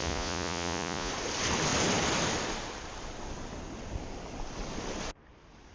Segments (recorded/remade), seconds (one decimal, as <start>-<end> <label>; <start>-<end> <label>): 0.0-1.1 remade; 1.1-5.7 recorded